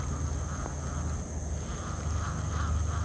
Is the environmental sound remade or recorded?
recorded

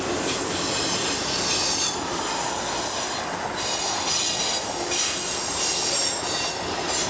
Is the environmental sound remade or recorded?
recorded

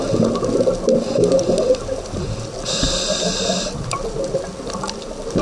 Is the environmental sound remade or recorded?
recorded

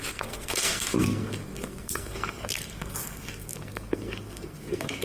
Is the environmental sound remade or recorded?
remade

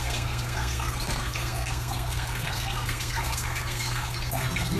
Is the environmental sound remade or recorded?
remade